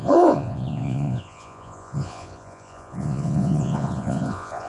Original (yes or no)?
no